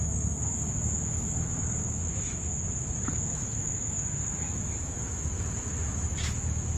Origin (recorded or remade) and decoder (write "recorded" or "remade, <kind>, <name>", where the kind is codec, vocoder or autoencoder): remade, autoencoder, DAC-VAE